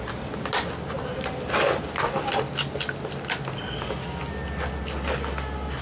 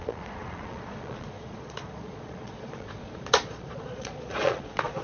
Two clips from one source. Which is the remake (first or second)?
second